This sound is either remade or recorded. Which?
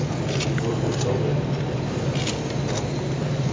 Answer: recorded